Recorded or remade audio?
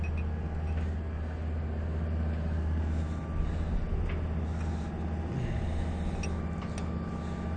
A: recorded